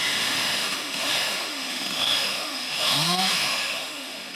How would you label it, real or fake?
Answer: fake